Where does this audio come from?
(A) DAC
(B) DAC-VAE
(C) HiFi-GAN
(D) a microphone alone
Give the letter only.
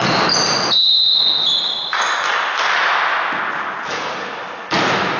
D